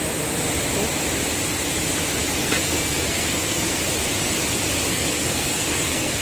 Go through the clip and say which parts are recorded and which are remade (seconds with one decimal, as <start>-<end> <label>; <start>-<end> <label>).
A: 0.0-2.4 recorded; 2.4-3.8 remade; 3.8-4.9 recorded; 4.9-6.2 remade